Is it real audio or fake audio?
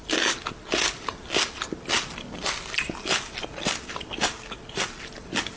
real